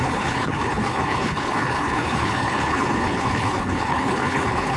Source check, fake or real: fake